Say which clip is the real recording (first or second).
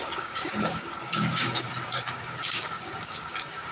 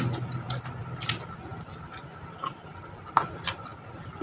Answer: second